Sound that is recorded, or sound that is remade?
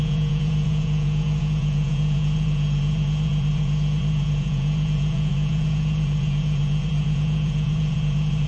remade